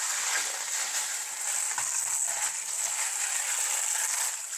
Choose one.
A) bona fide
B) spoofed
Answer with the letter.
A